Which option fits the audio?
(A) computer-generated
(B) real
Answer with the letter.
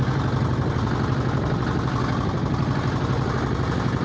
B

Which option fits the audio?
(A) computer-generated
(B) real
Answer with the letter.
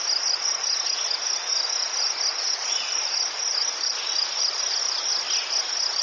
B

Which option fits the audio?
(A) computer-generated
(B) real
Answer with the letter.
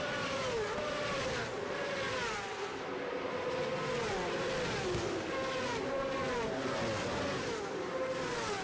B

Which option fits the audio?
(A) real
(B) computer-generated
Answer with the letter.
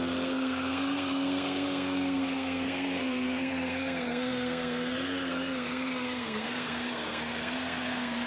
B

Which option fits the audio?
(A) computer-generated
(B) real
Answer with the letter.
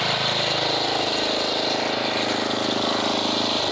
B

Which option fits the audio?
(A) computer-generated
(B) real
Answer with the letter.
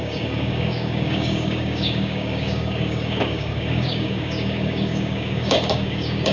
A